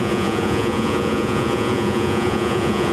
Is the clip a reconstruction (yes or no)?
yes